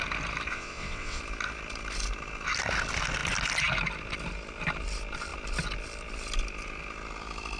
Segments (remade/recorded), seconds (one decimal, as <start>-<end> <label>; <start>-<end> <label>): 0.0-0.5 recorded; 0.5-1.2 remade; 1.2-7.6 recorded